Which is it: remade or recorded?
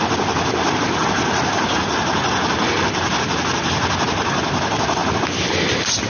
recorded